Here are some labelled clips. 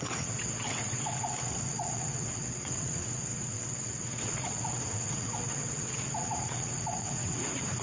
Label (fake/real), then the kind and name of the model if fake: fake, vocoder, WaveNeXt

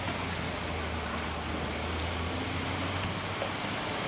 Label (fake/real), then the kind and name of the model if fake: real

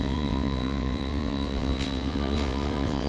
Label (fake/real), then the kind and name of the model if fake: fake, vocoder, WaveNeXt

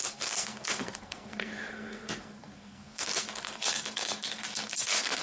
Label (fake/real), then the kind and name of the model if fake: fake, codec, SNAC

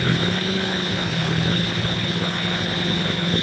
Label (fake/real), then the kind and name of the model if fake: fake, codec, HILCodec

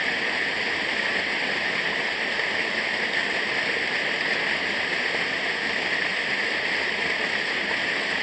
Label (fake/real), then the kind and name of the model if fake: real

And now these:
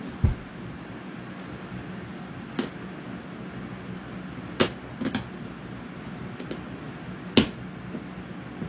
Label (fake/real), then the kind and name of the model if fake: real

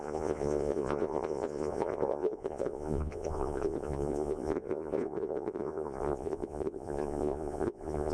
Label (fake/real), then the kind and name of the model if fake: fake, vocoder, Vocos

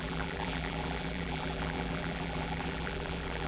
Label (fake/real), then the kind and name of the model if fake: fake, vocoder, BigVGAN v2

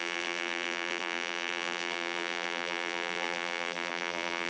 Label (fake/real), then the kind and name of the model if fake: fake, vocoder, BigVGAN v2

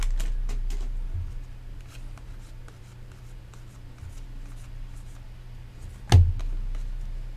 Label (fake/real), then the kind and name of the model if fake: real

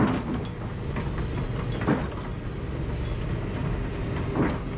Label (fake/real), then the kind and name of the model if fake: real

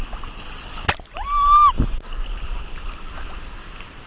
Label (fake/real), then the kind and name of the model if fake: real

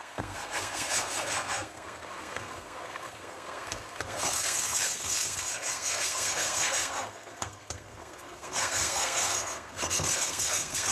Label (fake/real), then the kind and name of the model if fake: fake, codec, SNAC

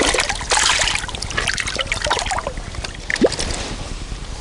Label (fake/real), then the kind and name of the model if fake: real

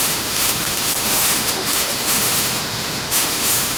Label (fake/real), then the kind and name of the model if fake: fake, autoencoder, DAC-VAE